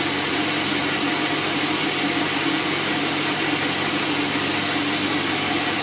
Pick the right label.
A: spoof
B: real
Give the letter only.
B